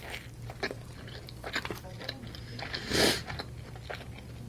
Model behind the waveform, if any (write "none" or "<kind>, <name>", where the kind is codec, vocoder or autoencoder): none